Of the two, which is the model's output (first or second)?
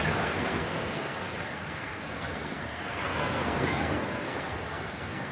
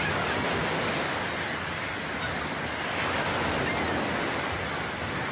first